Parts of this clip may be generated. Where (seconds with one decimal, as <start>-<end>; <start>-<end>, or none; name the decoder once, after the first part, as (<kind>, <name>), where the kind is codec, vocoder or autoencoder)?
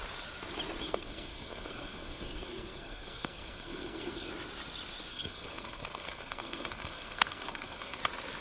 0.8-4.3 (codec, SNAC); 5.1-8.0